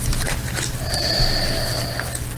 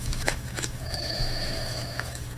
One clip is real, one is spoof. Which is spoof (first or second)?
second